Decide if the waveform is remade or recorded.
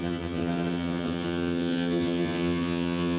remade